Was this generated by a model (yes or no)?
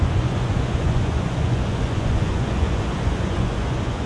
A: yes